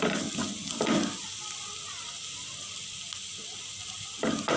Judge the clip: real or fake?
real